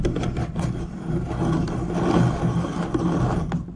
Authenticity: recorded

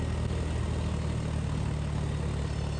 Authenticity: recorded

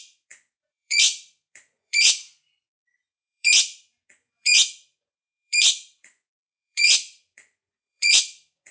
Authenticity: remade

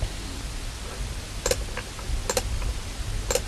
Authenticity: recorded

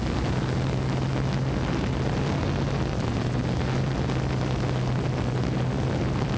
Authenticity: recorded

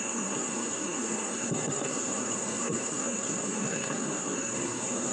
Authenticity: remade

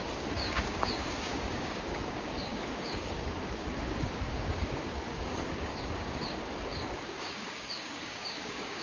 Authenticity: remade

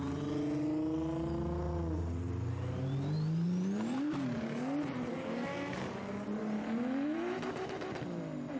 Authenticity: recorded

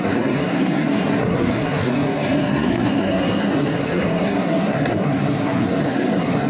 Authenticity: remade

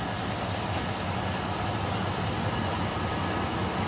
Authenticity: recorded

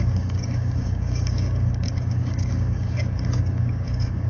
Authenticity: remade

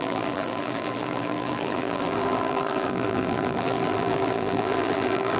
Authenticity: remade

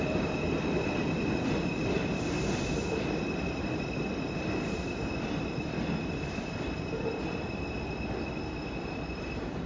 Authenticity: remade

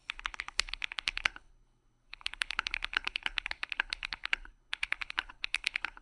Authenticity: remade